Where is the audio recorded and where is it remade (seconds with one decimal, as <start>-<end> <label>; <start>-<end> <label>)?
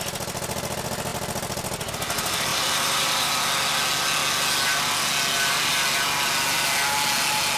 0.0-2.5 recorded; 2.5-3.3 remade; 3.3-7.6 recorded